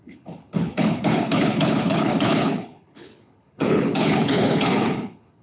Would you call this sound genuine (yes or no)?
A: no